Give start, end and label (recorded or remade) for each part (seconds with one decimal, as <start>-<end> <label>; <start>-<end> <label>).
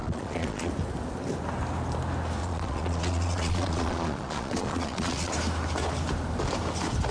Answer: 0.0-0.7 remade; 0.7-2.4 recorded; 2.4-5.3 remade; 5.3-7.1 recorded